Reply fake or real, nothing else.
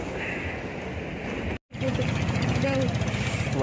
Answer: real